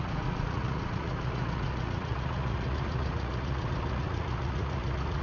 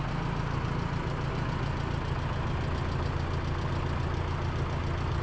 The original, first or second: second